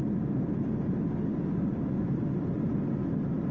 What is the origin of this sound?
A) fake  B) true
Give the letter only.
B